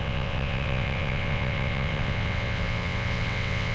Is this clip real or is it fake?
fake